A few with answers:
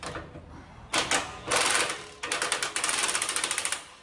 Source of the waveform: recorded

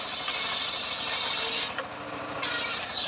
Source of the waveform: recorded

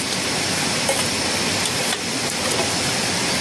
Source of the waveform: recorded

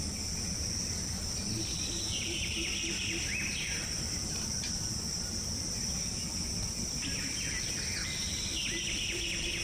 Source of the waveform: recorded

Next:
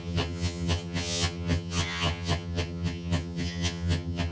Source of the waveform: remade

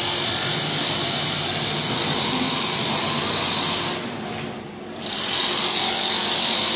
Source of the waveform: recorded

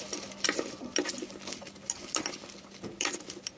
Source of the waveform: recorded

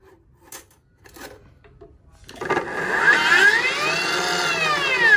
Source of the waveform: recorded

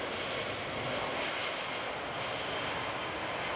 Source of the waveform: recorded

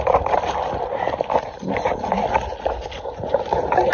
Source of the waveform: recorded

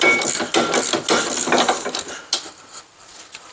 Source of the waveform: recorded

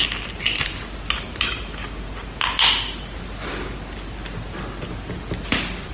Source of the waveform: recorded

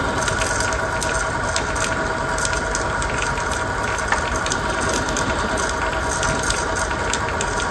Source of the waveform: recorded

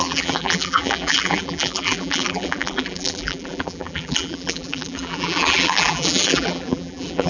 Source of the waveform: remade